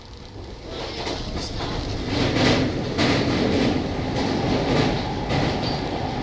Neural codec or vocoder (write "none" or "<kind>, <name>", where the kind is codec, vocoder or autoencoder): none